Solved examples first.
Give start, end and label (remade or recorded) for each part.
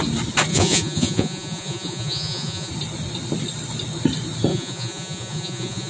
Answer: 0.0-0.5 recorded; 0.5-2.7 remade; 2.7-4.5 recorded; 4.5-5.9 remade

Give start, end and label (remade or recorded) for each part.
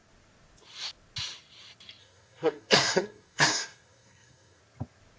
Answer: 0.0-2.0 recorded; 2.0-4.6 remade; 4.6-5.2 recorded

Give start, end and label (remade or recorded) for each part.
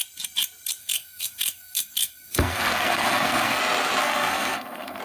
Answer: 0.0-0.8 recorded; 0.8-3.6 remade; 3.6-4.0 recorded; 4.0-5.0 remade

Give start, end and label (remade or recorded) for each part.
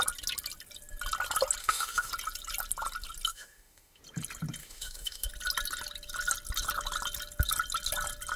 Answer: 0.0-1.6 recorded; 1.6-2.1 remade; 2.1-3.3 recorded; 3.3-4.0 remade; 4.0-4.6 recorded; 4.6-5.3 remade; 5.3-8.4 recorded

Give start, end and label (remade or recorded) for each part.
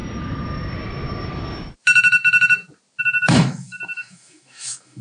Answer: 0.0-3.0 recorded; 3.0-5.0 remade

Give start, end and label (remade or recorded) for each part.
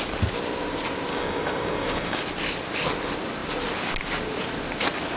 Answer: 0.0-1.1 recorded; 1.1-2.2 remade; 2.2-5.2 recorded